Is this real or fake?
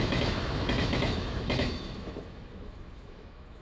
fake